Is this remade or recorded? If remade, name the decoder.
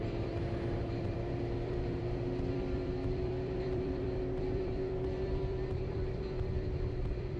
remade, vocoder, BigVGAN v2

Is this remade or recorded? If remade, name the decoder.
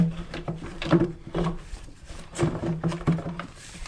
remade, vocoder, BigVGAN v2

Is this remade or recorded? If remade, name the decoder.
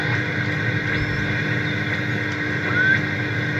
recorded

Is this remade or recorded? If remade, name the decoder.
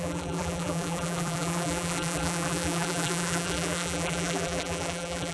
remade, vocoder, BigVGAN v2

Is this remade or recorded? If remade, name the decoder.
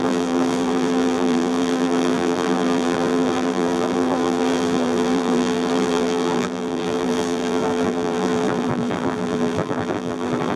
remade, vocoder, BigVGAN v2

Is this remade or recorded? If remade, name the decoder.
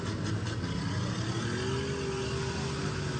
recorded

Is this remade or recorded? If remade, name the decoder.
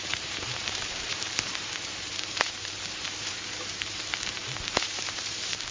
remade, vocoder, BigVGAN v2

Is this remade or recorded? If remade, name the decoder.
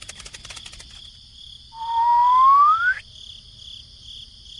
recorded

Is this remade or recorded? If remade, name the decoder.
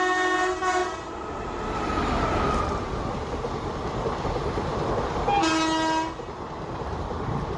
recorded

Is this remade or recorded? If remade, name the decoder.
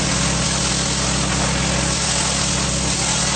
recorded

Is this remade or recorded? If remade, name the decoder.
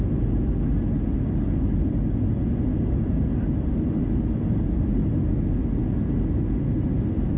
recorded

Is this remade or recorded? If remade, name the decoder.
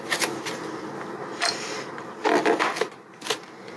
recorded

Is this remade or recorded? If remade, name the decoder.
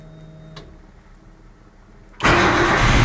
recorded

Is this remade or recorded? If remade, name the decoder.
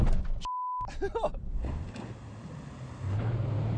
recorded